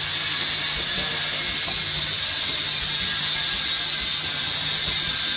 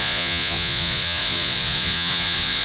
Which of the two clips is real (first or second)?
first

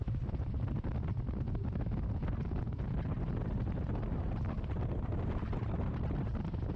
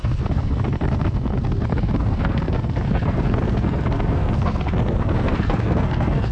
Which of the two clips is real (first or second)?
first